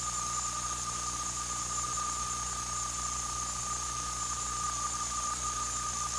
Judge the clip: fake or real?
real